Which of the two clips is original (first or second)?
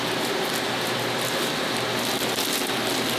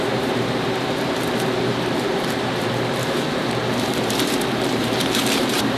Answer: first